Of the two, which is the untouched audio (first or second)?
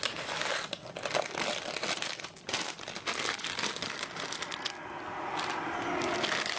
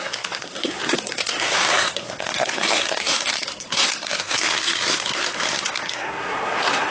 first